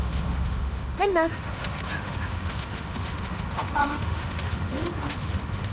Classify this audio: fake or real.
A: fake